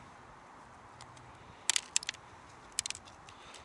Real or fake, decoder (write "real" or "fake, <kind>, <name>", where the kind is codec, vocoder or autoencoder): real